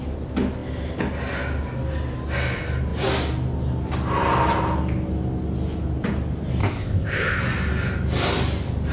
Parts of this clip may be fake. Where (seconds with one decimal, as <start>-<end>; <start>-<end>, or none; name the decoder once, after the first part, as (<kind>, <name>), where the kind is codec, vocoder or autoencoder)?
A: 6.6-7.4 (codec, ZipCodec)